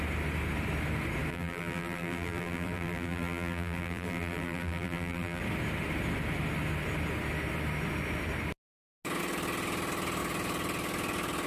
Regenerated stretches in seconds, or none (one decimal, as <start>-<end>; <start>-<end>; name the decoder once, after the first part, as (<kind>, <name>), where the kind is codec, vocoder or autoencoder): 1.3-5.4 (vocoder, BigVGAN v2)